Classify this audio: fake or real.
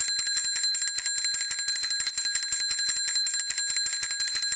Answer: real